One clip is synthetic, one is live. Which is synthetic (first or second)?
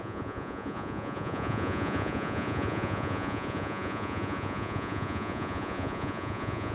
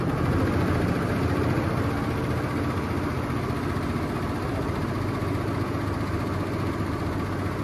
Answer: first